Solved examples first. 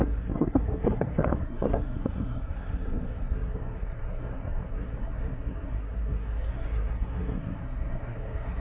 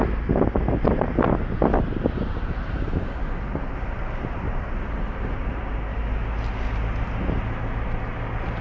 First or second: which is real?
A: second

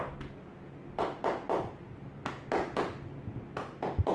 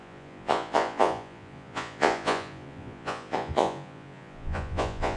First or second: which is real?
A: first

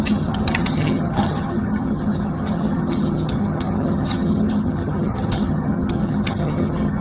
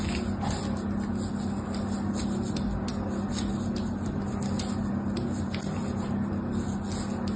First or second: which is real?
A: second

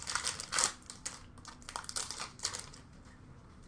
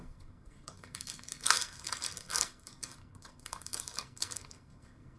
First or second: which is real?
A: first